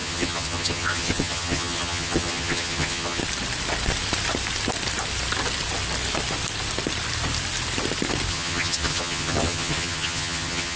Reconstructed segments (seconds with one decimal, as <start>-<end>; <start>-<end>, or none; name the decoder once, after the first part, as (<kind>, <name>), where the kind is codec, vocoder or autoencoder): 0.0-3.2 (vocoder, HiFi-GAN); 8.3-10.8